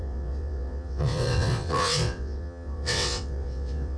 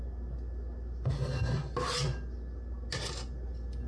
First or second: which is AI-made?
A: first